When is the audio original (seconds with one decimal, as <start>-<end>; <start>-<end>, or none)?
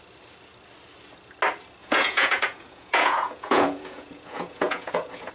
0.0-1.8